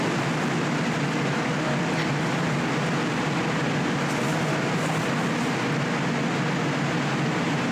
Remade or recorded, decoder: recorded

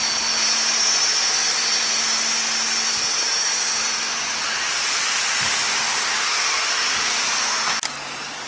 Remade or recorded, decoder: recorded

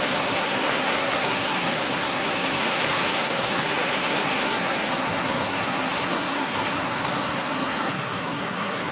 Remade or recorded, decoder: remade, codec, SNAC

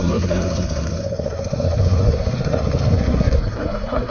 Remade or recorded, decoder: remade, codec, SNAC